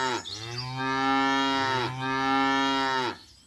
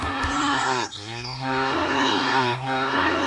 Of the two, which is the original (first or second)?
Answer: first